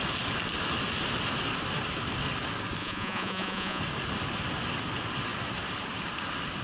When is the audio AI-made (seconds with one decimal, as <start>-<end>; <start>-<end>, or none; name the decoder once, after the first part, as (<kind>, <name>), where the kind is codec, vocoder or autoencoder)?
2.8-3.8 (vocoder, Vocos)